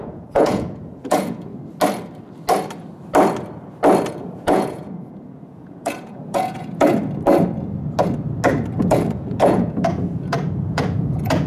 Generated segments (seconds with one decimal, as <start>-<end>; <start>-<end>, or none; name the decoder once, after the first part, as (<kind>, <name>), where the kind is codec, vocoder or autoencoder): 0.0-1.5 (vocoder, Vocos); 4.1-6.9; 8.8-11.5